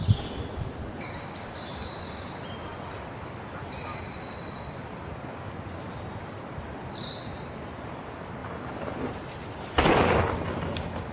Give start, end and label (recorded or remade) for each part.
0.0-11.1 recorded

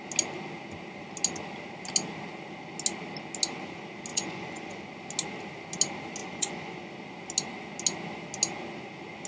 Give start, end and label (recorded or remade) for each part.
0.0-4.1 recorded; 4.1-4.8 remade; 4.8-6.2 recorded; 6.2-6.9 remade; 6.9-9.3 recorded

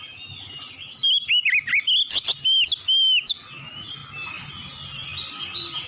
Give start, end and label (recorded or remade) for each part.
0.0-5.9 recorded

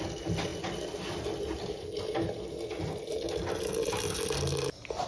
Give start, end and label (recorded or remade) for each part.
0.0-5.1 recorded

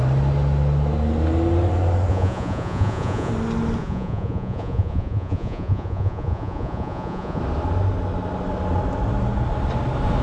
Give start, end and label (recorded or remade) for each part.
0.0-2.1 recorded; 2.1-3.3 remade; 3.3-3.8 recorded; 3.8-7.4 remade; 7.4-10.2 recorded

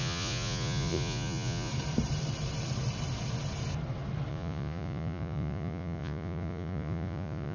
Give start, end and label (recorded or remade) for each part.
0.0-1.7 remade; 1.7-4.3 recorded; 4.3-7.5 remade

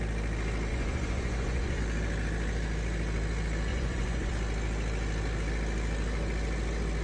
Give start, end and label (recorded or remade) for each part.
0.0-0.7 recorded; 0.7-1.8 remade; 1.8-3.7 recorded; 3.7-4.3 remade; 4.3-7.0 recorded